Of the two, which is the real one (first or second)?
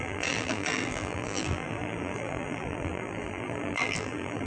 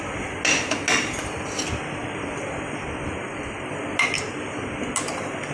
second